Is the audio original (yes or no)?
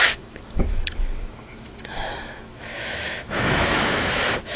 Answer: no